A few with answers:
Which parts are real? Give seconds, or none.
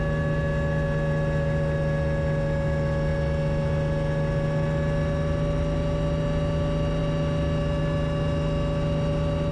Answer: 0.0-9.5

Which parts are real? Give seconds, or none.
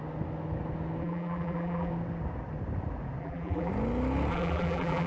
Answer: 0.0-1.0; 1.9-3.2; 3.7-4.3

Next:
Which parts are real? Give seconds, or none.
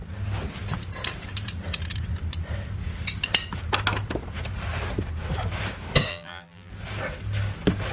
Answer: 0.0-6.1; 6.7-7.9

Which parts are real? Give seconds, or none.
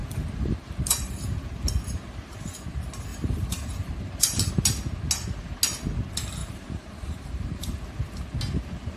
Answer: 1.1-3.1; 4.5-6.4; 7.8-9.0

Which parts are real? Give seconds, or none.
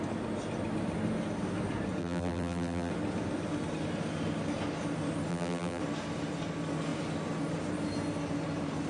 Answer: 0.0-2.0; 2.9-5.3; 5.8-8.9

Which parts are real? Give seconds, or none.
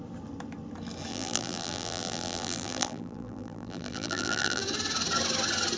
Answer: 0.0-1.1; 4.6-5.8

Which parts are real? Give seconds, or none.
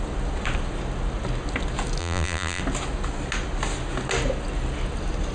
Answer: 0.0-2.0; 2.6-5.3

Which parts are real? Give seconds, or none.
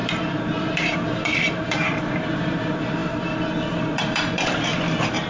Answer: none